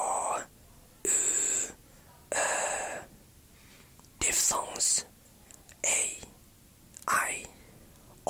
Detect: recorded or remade recorded